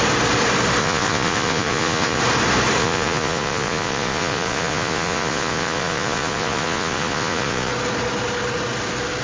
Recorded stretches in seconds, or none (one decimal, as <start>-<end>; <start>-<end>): 0.0-0.8; 2.2-2.8; 7.7-9.2